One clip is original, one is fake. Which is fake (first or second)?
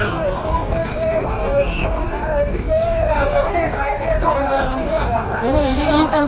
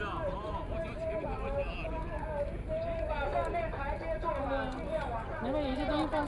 first